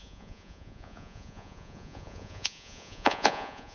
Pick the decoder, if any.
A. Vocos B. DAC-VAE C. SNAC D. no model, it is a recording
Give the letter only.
A